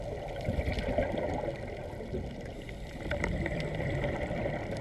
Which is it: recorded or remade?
recorded